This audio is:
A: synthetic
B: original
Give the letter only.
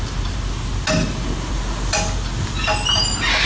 B